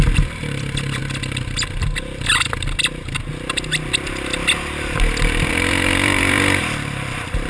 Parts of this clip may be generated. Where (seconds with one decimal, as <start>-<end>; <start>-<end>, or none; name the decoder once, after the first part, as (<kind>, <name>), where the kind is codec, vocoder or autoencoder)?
0.0-1.0 (vocoder, BigVGAN v2); 5.5-7.5